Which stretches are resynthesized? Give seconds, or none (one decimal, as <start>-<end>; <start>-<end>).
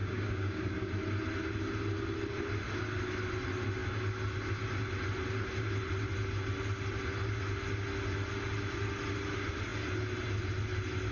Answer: 0.0-0.9